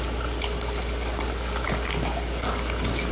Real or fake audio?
real